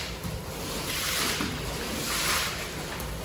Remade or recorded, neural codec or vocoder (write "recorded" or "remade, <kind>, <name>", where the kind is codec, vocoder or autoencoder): recorded